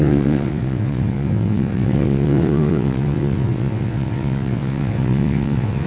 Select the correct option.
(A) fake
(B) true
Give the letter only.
A